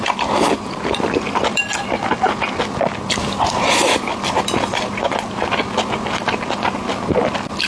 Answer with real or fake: real